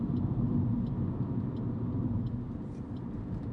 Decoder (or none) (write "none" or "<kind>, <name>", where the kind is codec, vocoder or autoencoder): none